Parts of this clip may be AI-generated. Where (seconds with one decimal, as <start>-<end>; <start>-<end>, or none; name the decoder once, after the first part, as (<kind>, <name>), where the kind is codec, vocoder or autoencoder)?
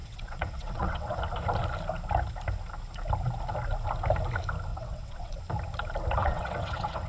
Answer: 0.0-1.2 (vocoder, WaveNeXt); 4.7-5.4; 6.2-7.1